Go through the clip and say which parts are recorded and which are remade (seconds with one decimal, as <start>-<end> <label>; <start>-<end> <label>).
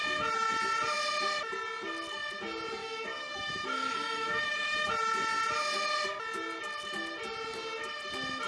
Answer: 0.0-2.8 recorded; 2.8-4.9 remade; 4.9-8.5 recorded